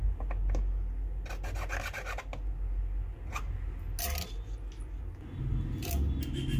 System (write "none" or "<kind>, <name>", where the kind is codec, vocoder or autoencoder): none